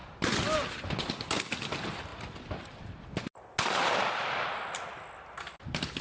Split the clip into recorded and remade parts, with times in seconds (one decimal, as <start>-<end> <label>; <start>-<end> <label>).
0.0-6.0 recorded